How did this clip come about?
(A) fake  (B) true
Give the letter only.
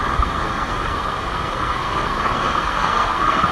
A